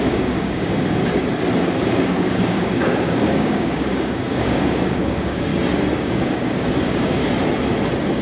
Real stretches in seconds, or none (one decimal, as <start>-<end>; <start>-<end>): 1.0-1.9; 5.5-6.0; 7.2-8.2